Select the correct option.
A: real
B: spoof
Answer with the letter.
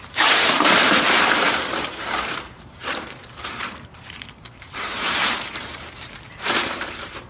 B